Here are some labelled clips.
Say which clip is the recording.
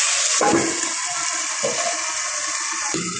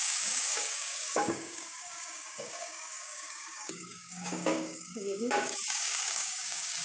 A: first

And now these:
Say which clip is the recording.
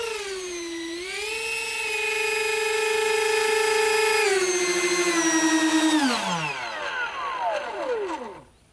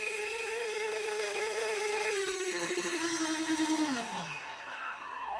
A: first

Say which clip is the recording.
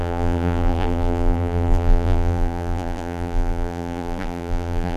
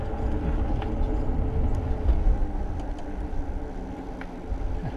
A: second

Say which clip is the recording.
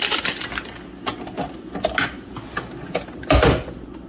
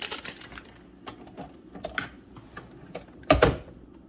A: first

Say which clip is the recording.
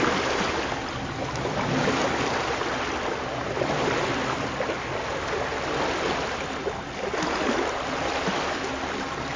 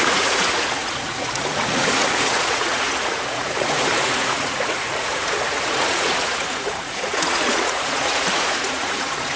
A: first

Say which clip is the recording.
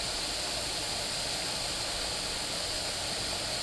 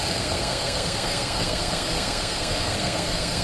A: first